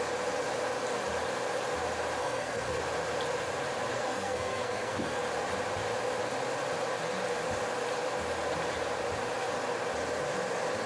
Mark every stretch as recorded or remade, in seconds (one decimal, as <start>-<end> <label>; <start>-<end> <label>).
0.0-2.2 recorded; 2.2-2.8 remade; 2.8-3.9 recorded; 3.9-5.2 remade; 5.2-10.9 recorded